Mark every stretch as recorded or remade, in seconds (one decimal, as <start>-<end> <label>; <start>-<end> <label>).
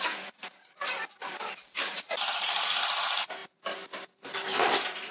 0.0-5.1 recorded